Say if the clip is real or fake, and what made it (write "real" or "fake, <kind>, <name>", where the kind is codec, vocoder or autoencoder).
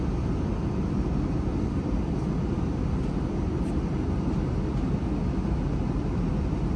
real